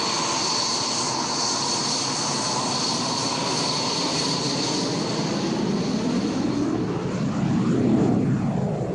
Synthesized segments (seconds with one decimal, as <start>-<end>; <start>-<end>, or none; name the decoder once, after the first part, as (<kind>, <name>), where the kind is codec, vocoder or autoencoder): 4.1-4.6 (vocoder, BigVGAN v2)